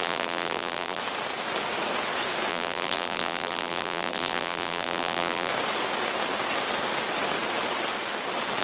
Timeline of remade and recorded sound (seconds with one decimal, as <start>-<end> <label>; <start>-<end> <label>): 0.0-1.0 remade; 1.0-2.5 recorded; 2.5-5.5 remade; 5.5-8.6 recorded